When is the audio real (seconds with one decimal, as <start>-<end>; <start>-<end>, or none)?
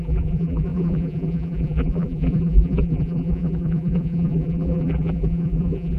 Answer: none